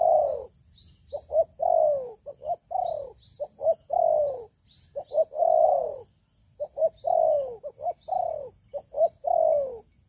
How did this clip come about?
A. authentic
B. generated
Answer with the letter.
A